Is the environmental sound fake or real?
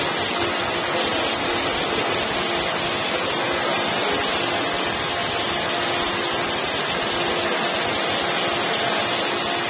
real